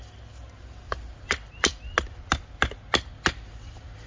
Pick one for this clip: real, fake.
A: real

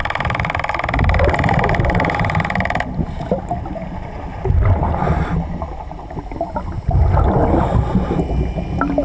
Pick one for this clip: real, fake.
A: real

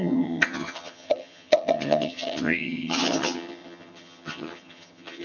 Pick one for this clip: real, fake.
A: fake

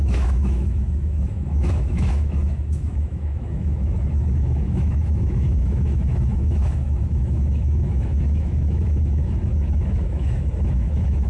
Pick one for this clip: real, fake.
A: fake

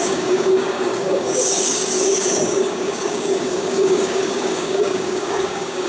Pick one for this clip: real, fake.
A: fake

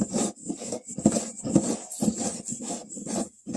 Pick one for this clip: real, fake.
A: real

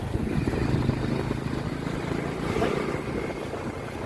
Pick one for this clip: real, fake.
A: real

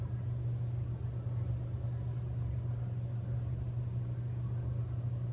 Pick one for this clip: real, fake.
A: real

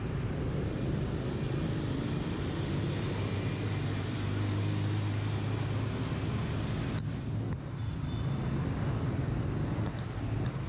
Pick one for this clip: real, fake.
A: real